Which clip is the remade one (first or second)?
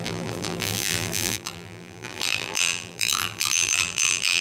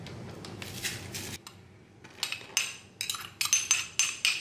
first